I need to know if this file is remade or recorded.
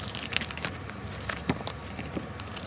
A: remade